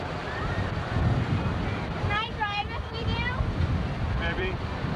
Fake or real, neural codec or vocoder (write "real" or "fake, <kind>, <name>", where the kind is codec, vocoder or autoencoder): fake, vocoder, BigVGAN v2